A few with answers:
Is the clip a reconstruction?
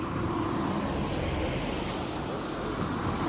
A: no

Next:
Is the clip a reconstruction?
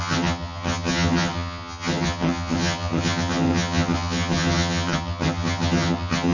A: yes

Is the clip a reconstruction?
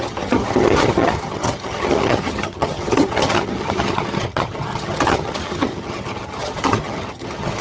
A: yes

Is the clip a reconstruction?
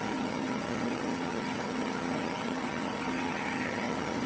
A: yes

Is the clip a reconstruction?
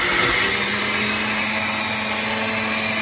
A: no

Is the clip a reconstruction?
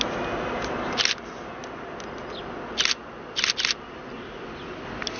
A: no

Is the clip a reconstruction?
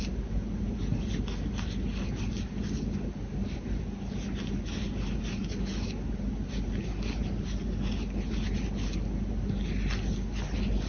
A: no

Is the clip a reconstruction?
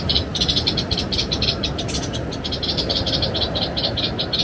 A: no